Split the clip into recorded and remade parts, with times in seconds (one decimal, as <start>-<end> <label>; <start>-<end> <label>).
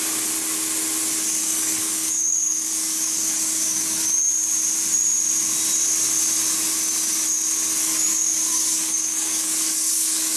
0.0-1.4 recorded; 1.4-4.0 remade; 4.0-7.8 recorded; 7.8-10.4 remade